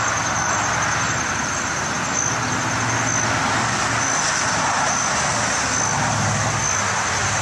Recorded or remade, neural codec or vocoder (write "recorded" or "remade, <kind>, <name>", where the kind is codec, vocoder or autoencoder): recorded